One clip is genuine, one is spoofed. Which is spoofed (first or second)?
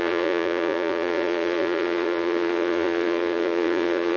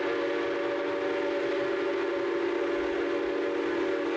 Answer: first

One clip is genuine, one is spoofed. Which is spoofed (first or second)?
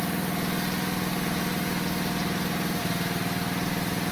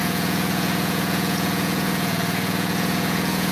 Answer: second